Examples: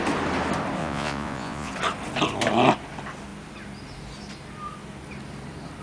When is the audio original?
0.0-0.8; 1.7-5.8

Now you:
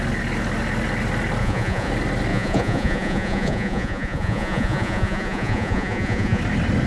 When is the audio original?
0.0-1.4; 1.9-2.3; 6.4-6.9

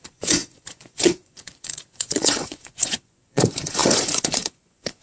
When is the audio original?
none

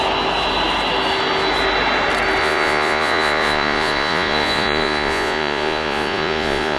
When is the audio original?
0.0-2.4

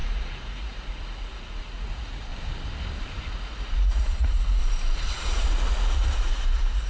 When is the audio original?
2.3-3.3; 4.6-5.1

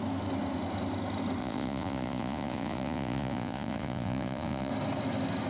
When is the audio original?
0.0-1.4; 4.7-5.5